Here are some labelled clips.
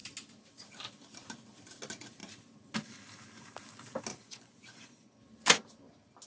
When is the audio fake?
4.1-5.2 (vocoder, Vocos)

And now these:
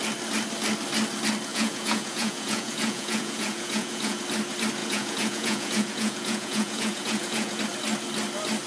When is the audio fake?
1.5-4.2 (vocoder, Vocos); 4.8-7.6

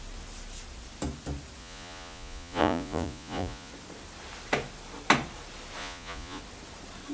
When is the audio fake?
1.6-3.7 (vocoder, Vocos); 5.8-6.4

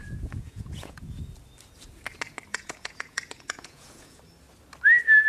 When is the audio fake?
0.0-1.2 (vocoder, Vocos); 2.5-4.2

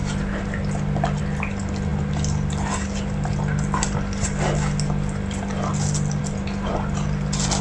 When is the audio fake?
none

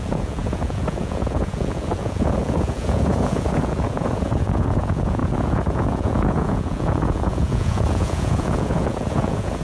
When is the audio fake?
0.0-9.6 (vocoder, Vocos)